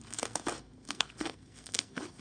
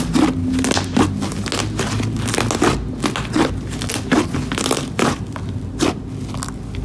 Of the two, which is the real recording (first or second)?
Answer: second